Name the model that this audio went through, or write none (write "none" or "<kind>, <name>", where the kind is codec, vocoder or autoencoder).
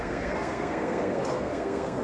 codec, SNAC